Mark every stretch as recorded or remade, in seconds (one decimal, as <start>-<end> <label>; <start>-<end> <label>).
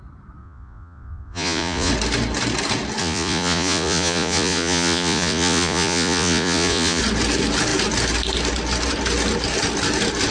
0.0-0.4 recorded; 0.4-1.9 remade; 1.9-3.0 recorded; 3.0-7.0 remade; 7.0-10.3 recorded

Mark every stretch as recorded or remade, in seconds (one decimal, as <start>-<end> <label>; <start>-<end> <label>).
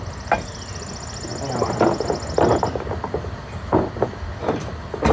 0.0-5.1 recorded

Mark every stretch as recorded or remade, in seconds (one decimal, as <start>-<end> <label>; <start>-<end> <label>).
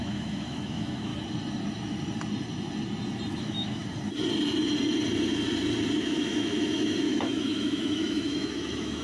0.0-1.1 remade; 1.1-3.4 recorded; 3.4-3.8 remade; 3.8-6.0 recorded; 6.0-9.0 remade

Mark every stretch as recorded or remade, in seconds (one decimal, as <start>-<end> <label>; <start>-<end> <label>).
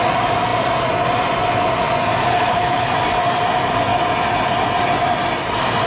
0.0-2.2 recorded; 2.2-2.9 remade; 2.9-5.9 recorded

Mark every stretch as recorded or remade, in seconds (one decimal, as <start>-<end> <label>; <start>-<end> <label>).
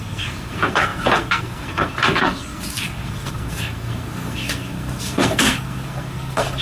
0.0-6.6 remade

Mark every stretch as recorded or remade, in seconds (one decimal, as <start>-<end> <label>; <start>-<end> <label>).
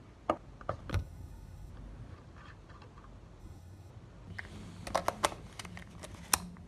0.0-0.9 recorded; 0.9-1.7 remade; 1.7-3.4 recorded; 3.4-3.9 remade; 3.9-6.7 recorded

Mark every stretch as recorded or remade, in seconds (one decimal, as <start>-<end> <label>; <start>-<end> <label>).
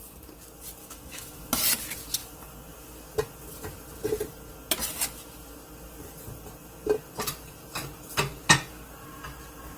0.0-0.8 recorded; 0.8-1.5 remade; 1.5-9.8 recorded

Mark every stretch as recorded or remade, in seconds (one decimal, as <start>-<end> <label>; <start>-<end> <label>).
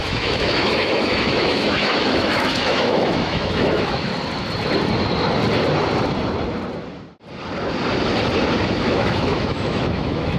0.0-4.1 remade; 4.1-8.8 recorded; 8.8-10.4 remade